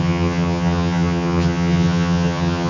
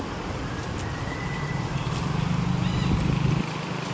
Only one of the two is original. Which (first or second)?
second